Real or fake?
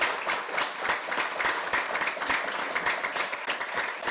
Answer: real